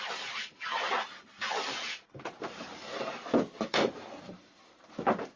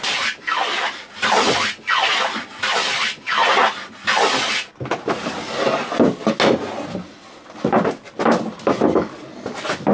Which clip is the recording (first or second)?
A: second